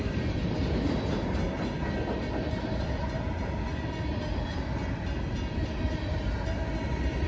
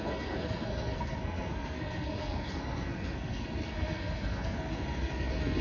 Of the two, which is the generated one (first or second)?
second